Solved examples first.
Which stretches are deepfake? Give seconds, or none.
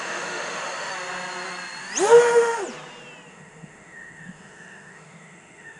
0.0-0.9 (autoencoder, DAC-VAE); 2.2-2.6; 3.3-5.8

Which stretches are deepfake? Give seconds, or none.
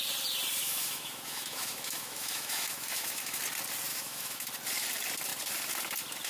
0.6-3.4 (autoencoder, DAC-VAE); 3.9-4.5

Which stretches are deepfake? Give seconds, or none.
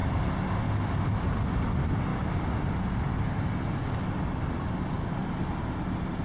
none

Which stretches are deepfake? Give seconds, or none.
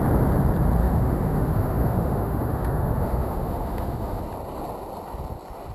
0.8-4.2 (autoencoder, DAC-VAE)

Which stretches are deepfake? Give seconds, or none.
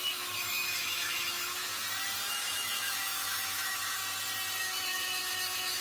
0.0-1.7 (autoencoder, DAC-VAE); 2.3-4.0; 4.6-5.8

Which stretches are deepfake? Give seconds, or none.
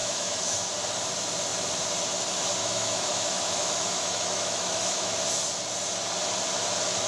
0.0-0.7 (autoencoder, DAC-VAE); 2.6-5.2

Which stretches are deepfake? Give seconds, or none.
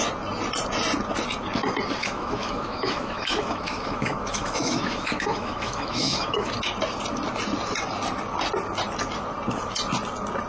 2.0-6.5 (autoencoder, DAC-VAE)